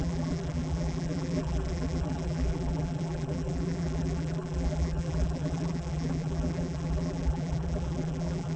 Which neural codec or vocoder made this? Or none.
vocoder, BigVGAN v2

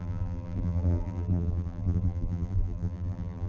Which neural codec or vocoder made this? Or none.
vocoder, BigVGAN v2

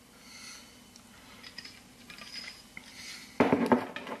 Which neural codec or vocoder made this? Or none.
none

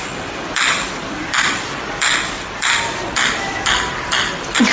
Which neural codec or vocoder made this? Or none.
vocoder, BigVGAN v2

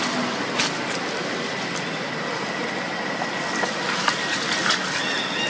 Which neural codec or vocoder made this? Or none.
none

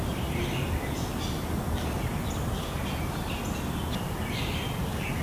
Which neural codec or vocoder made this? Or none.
none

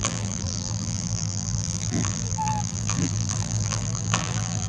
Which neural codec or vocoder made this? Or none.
vocoder, BigVGAN v2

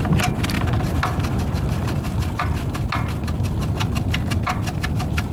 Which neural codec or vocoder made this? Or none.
none